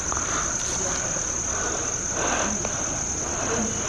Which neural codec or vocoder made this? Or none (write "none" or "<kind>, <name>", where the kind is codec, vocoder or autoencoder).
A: none